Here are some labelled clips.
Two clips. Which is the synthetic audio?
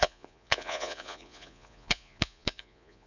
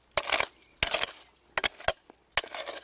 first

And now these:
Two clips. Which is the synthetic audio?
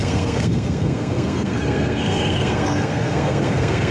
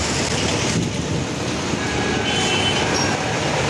first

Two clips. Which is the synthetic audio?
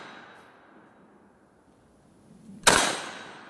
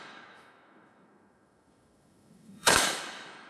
second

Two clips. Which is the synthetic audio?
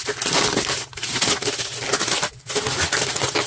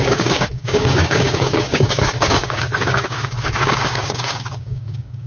second